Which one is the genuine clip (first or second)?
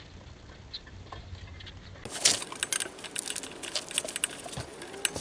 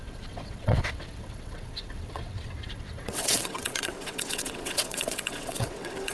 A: first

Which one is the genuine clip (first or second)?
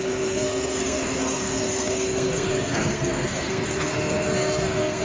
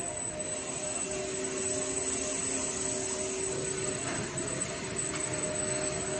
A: second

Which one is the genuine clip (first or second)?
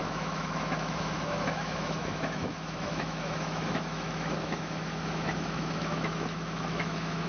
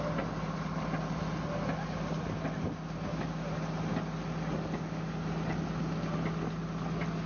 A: second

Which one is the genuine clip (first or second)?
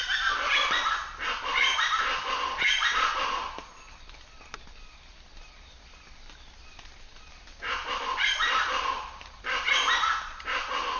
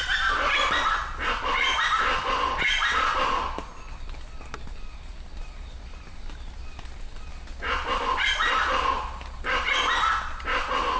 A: second